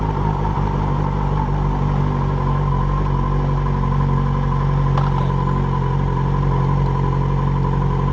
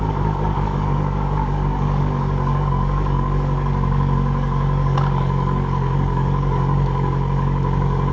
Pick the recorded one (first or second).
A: first